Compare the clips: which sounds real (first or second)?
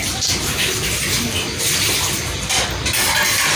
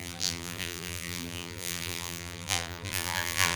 first